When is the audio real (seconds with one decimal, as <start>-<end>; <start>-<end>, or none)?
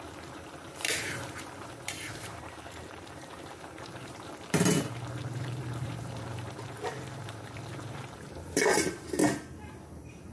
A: 9.2-9.9